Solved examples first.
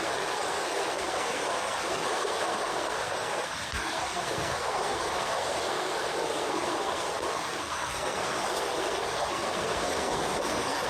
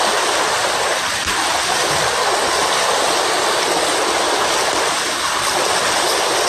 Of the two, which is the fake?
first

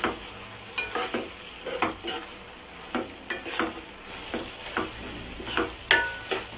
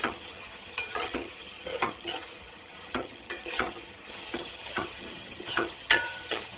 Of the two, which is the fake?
second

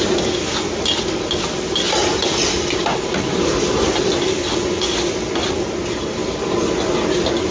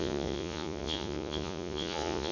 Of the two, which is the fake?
second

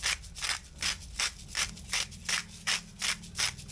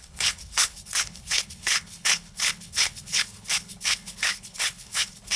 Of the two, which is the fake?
second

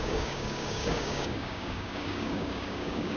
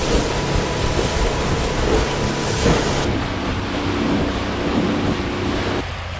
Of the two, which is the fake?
first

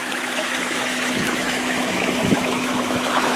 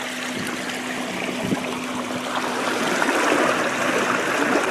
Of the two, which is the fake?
first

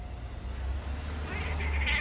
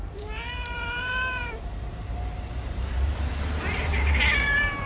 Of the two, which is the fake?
second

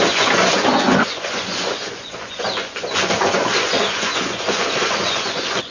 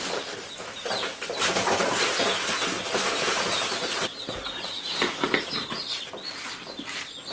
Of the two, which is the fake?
first